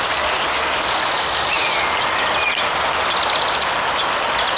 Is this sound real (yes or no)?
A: yes